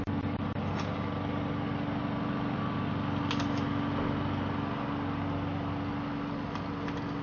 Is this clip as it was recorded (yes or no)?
yes